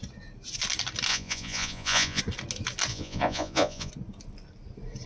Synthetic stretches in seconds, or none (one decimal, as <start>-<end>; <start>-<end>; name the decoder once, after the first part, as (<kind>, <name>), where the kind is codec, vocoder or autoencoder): 1.1-2.2 (vocoder, Vocos); 2.9-3.9